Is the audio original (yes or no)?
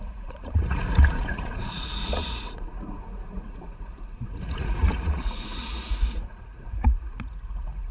no